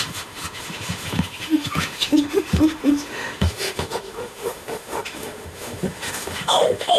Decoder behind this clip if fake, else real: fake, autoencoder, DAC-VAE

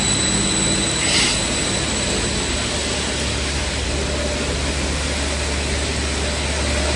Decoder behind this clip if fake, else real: real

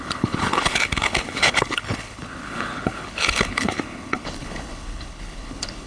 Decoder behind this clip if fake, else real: fake, codec, HILCodec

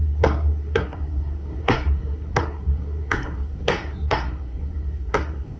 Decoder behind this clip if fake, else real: fake, codec, SNAC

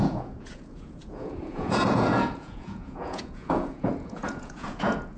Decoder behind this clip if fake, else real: fake, vocoder, Vocos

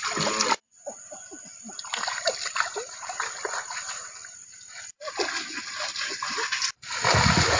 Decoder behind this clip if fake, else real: real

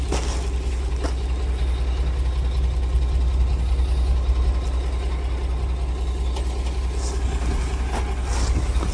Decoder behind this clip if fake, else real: real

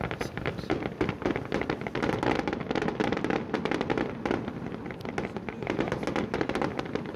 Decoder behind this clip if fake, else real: real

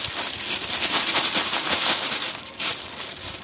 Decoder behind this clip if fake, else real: real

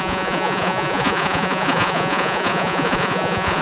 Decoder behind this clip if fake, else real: fake, vocoder, Vocos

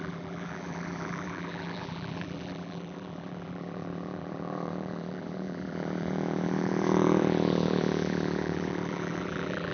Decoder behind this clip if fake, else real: fake, vocoder, BigVGAN v2